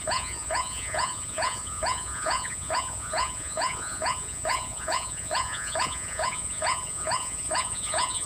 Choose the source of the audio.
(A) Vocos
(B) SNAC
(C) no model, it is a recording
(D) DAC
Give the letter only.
A